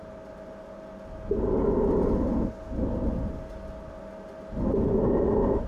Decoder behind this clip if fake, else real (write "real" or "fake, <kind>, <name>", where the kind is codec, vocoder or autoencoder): real